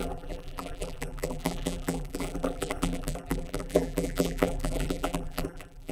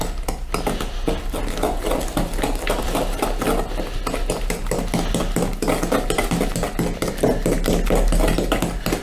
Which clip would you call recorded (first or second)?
second